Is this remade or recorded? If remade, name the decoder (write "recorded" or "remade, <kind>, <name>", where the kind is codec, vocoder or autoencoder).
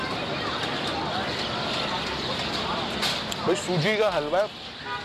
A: recorded